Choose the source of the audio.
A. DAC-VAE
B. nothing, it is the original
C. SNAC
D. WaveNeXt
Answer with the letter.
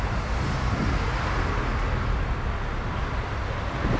B